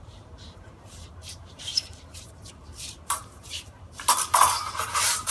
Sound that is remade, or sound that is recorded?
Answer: remade